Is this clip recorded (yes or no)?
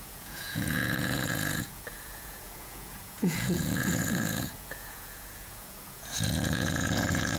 no